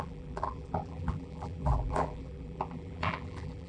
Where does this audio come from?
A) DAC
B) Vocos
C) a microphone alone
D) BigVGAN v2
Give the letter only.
D